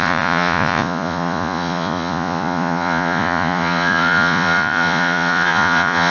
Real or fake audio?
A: fake